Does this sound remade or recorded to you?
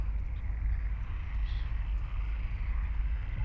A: recorded